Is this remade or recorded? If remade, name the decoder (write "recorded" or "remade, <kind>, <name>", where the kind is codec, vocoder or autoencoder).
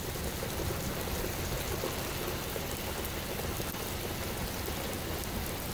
recorded